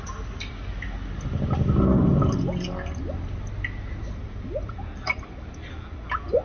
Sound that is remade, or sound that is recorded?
recorded